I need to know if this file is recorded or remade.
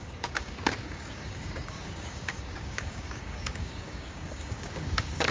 remade